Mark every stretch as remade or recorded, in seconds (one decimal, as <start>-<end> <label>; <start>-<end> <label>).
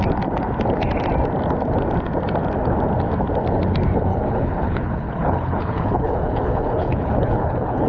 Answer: 0.0-4.1 recorded; 4.1-7.9 remade